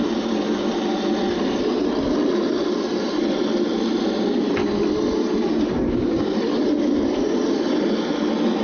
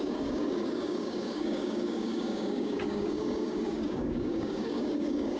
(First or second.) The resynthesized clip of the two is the second